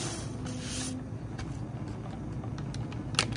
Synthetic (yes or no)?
no